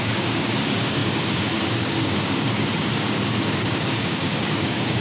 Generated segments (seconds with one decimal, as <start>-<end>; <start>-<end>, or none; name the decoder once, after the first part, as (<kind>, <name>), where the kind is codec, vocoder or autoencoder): 0.0-5.0 (codec, DAC)